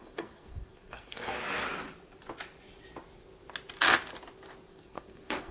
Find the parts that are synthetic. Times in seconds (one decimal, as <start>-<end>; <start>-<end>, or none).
0.0-1.4; 4.7-5.5